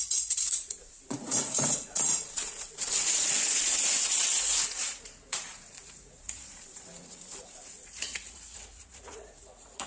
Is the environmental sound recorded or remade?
remade